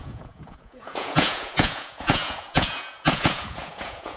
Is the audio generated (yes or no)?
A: yes